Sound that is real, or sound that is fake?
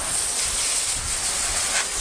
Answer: fake